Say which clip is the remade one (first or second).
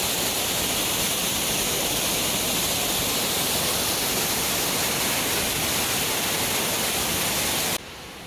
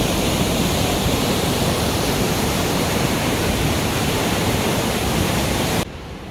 second